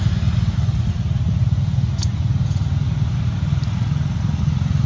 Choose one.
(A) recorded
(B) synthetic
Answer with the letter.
A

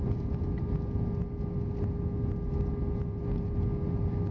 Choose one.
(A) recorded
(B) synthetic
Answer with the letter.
A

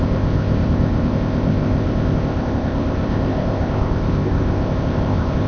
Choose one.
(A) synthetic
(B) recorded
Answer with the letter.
A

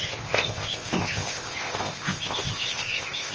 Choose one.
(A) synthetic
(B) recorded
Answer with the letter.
A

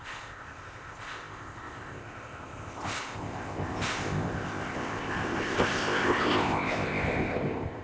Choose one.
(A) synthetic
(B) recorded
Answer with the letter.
A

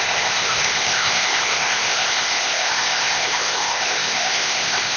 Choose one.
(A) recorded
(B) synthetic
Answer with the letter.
B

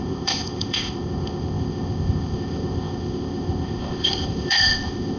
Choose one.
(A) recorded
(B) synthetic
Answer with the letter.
B